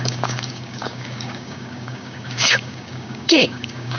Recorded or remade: remade